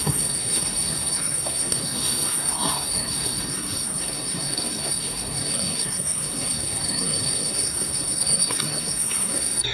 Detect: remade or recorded remade